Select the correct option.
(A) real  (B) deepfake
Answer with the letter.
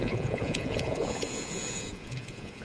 B